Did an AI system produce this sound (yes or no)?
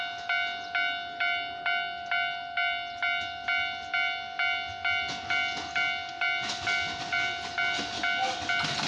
no